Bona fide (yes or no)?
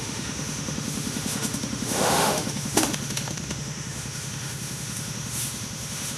no